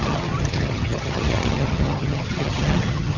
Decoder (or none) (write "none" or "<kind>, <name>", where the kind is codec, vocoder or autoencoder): vocoder, HiFi-GAN